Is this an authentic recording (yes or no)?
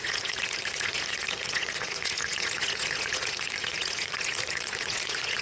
no